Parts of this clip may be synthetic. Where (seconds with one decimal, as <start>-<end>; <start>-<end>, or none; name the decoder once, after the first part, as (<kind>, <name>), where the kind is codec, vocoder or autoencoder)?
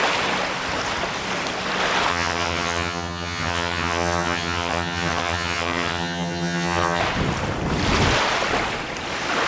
2.1-7.0 (vocoder, HiFi-GAN)